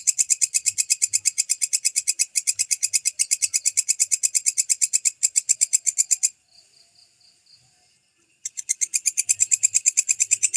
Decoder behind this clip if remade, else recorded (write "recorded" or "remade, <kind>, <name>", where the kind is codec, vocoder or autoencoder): recorded